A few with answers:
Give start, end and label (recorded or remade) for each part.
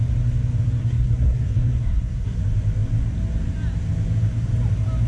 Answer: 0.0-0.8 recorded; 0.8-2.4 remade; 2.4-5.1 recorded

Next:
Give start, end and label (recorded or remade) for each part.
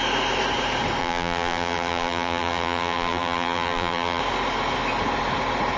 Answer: 0.0-1.0 recorded; 1.0-4.2 remade; 4.2-5.8 recorded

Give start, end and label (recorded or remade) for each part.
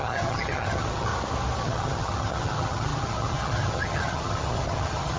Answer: 0.0-1.1 remade; 1.1-1.6 recorded; 1.6-5.2 remade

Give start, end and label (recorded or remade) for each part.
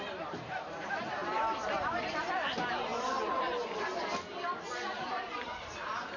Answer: 0.0-1.2 remade; 1.2-1.7 recorded; 1.7-2.9 remade; 2.9-5.1 recorded; 5.1-6.2 remade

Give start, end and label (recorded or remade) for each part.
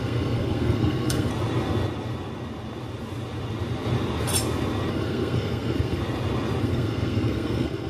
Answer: 0.0-1.3 remade; 1.3-4.9 recorded; 4.9-6.0 remade; 6.0-6.6 recorded; 6.6-7.9 remade